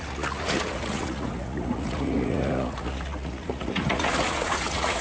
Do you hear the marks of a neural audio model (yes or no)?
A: yes